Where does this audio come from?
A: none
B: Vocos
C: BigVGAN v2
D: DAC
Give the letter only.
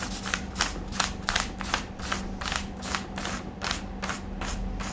C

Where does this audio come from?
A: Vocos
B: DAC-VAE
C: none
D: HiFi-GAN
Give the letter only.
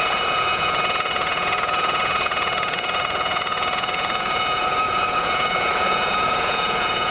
A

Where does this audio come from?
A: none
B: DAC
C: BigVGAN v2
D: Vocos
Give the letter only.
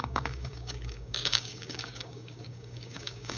B